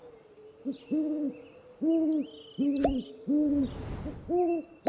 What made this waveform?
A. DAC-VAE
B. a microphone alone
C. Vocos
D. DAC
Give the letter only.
B